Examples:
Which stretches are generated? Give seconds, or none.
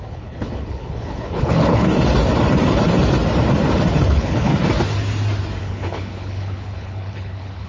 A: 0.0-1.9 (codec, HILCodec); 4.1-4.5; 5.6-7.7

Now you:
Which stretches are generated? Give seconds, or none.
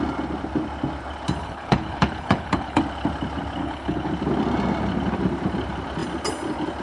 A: 1.4-2.8 (codec, HILCodec); 3.6-4.1